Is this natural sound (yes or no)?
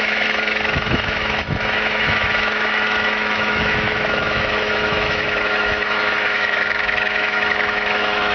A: no